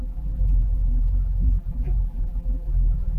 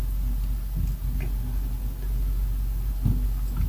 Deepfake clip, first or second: first